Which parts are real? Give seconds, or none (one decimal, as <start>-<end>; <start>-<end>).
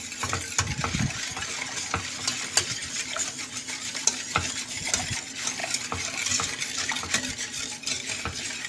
0.0-8.7